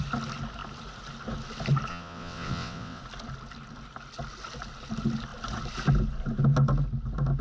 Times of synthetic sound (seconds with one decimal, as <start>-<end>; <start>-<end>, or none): 1.9-3.0